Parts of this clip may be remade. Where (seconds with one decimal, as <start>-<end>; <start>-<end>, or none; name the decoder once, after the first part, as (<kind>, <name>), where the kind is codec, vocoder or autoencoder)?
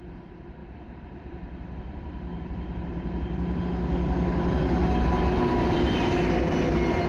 0.6-3.6 (vocoder, BigVGAN v2); 5.6-6.3